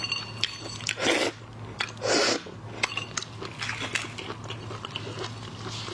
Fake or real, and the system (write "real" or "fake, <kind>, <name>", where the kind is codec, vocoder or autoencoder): real